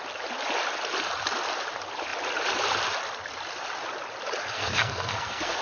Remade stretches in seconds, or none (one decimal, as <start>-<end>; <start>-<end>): 4.4-5.6